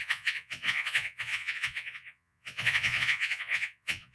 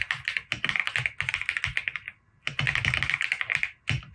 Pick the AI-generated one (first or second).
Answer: first